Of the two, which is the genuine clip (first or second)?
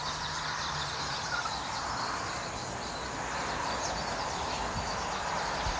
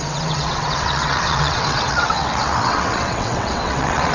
first